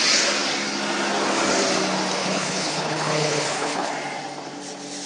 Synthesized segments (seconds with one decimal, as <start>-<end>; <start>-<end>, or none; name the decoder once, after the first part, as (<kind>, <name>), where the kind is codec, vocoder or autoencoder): 2.2-3.9 (codec, HILCodec)